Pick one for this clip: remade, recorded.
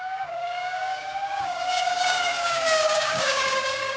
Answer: remade